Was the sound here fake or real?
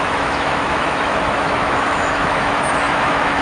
fake